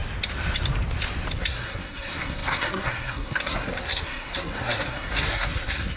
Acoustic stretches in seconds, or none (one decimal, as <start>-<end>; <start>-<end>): 0.0-1.4